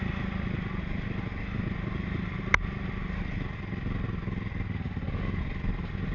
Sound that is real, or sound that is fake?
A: real